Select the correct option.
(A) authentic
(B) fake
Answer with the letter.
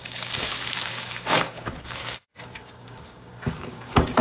B